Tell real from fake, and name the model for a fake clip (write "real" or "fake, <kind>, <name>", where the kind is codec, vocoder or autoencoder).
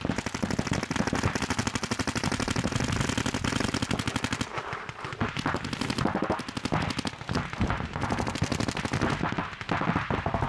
real